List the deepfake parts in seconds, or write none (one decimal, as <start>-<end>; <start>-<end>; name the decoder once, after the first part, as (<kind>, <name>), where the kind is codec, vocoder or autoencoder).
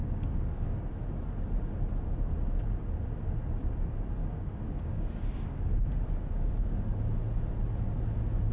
0.0-0.9 (codec, DAC); 4.2-7.0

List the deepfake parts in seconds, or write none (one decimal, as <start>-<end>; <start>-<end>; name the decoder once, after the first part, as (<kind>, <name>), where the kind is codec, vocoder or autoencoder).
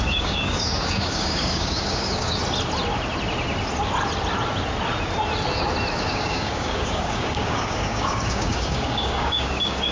0.0-2.4 (codec, DAC); 6.0-9.9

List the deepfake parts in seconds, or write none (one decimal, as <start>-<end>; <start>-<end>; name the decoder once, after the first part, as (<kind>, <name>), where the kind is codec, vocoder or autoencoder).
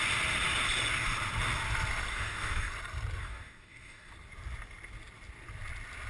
2.1-2.7 (codec, DAC); 3.2-4.1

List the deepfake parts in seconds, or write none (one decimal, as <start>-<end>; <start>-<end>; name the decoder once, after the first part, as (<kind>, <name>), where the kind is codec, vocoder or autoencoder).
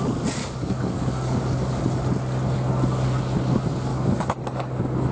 0.4-1.8 (codec, DAC); 3.9-5.1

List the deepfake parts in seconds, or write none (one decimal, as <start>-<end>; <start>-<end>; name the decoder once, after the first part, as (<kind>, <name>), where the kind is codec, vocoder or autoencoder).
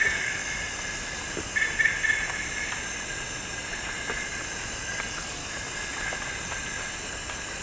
0.0-0.4 (codec, DAC); 5.0-5.4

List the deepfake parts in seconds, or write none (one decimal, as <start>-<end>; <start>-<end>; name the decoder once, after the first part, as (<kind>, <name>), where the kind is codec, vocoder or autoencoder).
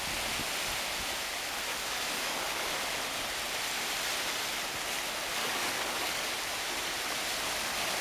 1.7-2.7 (codec, DAC); 5.4-6.3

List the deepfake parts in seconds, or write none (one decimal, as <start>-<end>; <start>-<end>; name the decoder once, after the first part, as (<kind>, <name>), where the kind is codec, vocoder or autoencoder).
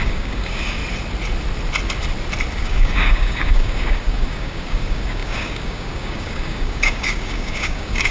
0.0-0.8 (codec, DAC); 2.6-8.1